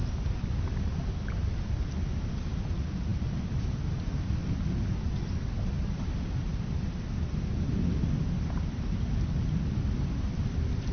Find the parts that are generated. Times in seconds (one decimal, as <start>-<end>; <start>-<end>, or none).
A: none